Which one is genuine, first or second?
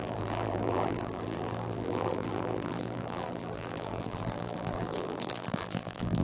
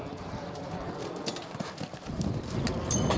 second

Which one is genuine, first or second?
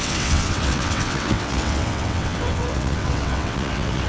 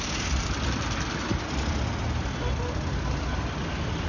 second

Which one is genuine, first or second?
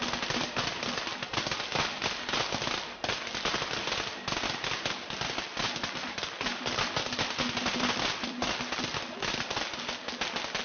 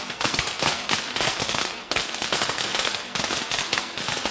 first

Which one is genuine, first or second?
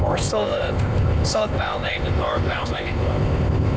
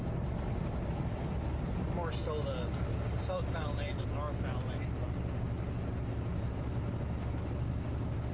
second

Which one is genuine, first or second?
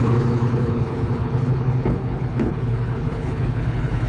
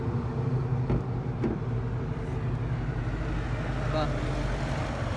second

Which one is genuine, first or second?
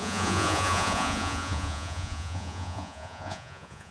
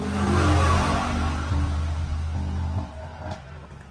second